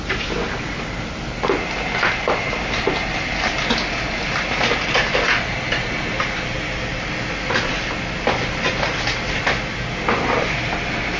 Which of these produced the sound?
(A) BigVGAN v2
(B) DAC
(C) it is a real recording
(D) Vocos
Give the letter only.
C